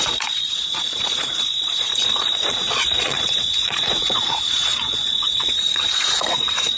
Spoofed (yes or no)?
yes